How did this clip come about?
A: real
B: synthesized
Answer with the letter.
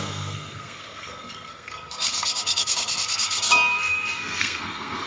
B